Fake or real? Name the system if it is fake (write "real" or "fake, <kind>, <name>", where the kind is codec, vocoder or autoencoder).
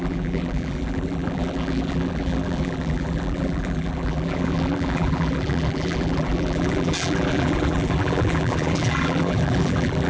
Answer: fake, vocoder, BigVGAN v2